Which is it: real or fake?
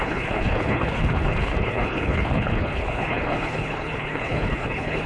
fake